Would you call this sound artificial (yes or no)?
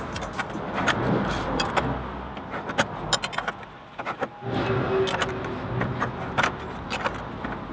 no